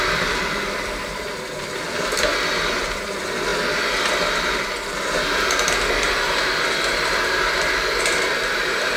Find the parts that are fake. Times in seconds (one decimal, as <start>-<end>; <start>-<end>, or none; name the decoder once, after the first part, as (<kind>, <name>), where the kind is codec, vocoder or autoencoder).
0.0-3.5 (vocoder, BigVGAN v2); 8.0-9.0